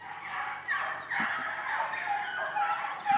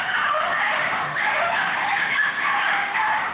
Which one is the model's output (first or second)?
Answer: second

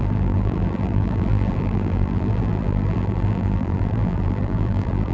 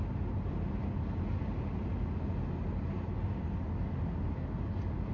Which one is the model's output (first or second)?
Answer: first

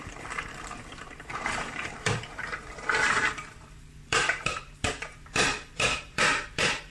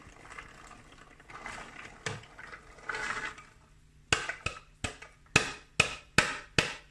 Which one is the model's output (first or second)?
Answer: first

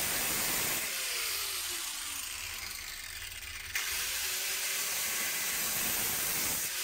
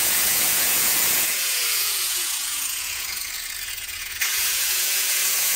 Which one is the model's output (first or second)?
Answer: second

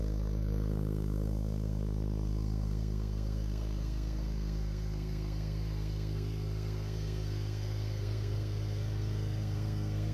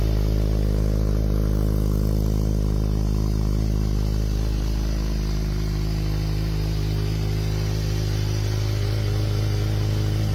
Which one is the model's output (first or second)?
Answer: first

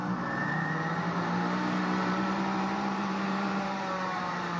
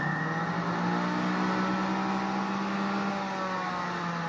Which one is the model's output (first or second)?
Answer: first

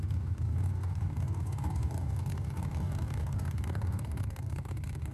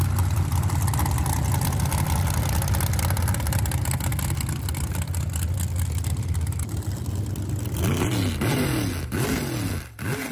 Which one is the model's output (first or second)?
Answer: first